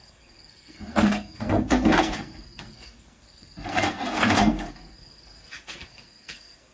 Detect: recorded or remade remade